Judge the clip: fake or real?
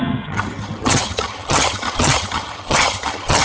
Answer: fake